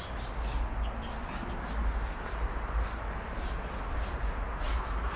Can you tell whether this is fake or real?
real